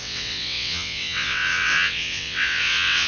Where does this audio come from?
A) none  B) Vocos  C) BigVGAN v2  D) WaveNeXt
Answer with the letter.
D